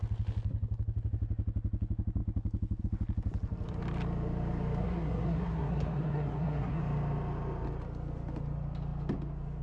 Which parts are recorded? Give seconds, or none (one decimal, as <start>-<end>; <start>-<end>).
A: 0.0-4.8; 6.8-9.6